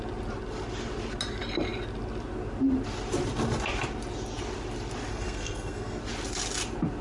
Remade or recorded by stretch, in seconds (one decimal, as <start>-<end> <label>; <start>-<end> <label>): 0.0-5.1 recorded; 5.1-6.0 remade; 6.0-7.0 recorded